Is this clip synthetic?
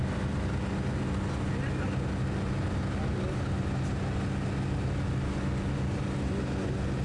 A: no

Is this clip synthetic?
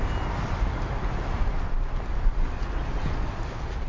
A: no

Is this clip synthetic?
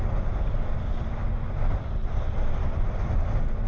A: no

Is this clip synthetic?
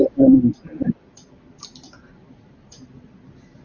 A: no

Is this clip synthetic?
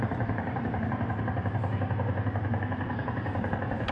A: yes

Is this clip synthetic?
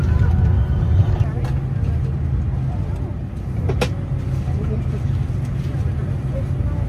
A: no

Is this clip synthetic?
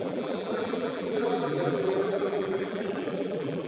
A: yes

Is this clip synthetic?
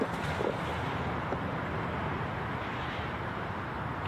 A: yes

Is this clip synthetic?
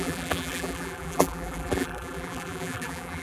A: yes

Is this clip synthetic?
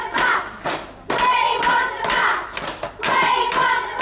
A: no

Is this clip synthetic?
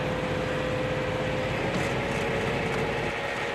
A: no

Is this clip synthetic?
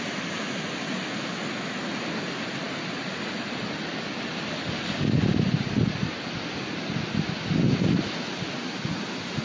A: no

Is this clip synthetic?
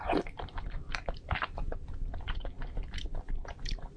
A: yes